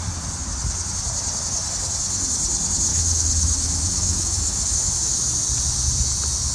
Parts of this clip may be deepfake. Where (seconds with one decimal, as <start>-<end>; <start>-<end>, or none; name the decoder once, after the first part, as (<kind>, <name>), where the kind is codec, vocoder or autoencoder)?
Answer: 2.9-5.5 (autoencoder, DAC-VAE)